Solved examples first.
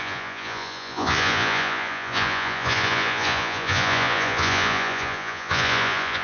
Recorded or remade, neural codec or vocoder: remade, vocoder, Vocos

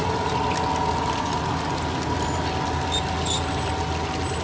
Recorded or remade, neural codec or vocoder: recorded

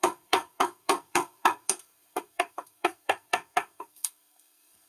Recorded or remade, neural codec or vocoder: remade, codec, SNAC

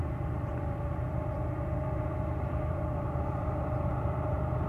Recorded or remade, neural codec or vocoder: remade, vocoder, BigVGAN v2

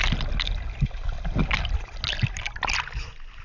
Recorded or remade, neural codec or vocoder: recorded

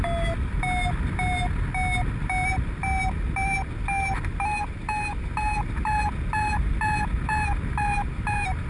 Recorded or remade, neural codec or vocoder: recorded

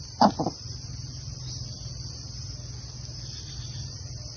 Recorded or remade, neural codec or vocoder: recorded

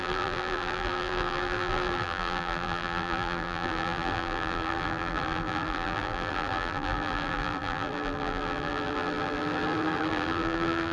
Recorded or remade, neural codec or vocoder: remade, vocoder, BigVGAN v2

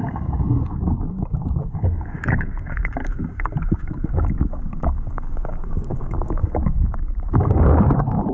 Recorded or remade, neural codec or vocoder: remade, codec, DAC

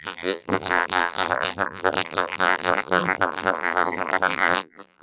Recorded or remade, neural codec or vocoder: remade, vocoder, BigVGAN v2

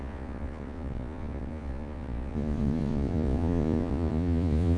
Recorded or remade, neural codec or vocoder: remade, vocoder, Vocos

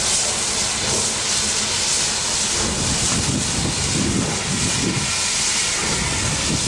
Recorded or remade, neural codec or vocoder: recorded